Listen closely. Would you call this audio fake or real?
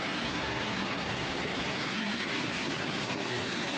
fake